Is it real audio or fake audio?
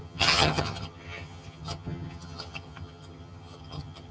fake